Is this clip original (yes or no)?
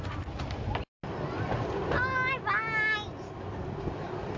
yes